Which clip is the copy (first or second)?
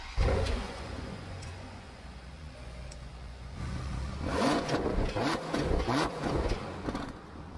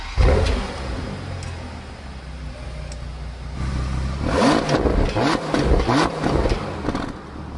first